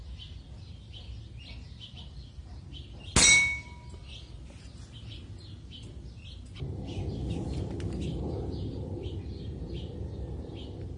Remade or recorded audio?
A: recorded